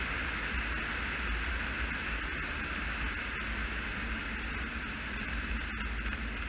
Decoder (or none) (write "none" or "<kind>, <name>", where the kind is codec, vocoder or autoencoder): none